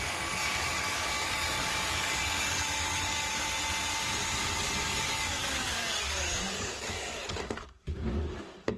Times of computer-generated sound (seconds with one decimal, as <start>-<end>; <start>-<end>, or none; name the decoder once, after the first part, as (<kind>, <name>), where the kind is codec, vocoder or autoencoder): 0.0-3.3 (codec, DAC); 4.2-8.8